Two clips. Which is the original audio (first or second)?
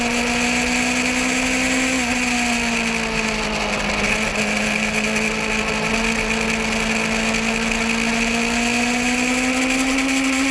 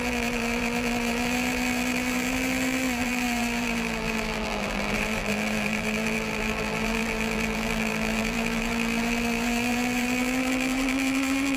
first